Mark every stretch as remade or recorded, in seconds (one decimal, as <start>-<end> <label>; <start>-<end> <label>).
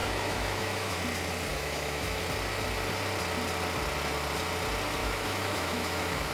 0.0-1.0 remade; 1.0-1.5 recorded; 1.5-2.2 remade; 2.2-5.0 recorded; 5.0-6.3 remade